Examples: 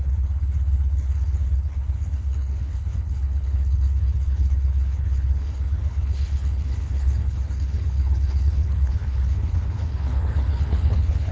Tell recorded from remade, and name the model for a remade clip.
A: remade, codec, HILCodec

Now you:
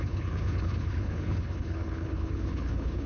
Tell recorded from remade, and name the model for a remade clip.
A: remade, codec, HILCodec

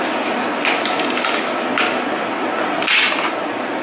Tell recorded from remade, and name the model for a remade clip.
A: recorded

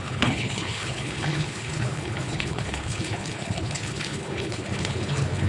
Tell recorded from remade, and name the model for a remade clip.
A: remade, codec, HILCodec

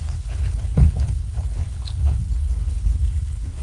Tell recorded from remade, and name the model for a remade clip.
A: remade, codec, HILCodec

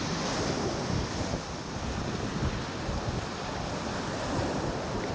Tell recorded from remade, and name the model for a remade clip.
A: recorded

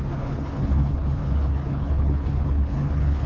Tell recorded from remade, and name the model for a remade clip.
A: remade, codec, HILCodec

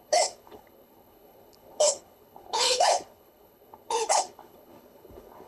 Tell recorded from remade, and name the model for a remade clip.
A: remade, codec, HILCodec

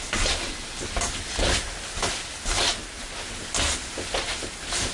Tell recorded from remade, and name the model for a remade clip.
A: recorded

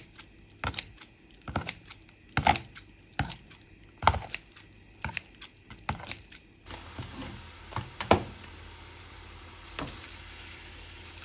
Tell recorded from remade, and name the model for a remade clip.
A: recorded